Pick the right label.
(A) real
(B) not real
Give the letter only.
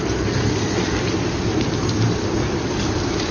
A